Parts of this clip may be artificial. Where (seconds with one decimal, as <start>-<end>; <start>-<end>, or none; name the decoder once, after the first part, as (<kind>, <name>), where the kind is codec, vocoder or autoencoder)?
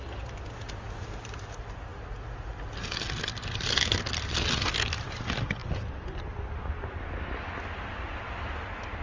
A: none